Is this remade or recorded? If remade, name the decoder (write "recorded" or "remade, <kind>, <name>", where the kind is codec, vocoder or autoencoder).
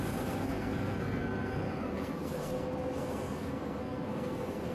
remade, codec, SNAC